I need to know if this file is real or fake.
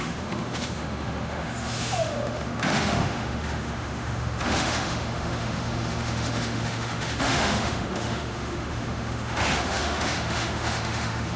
fake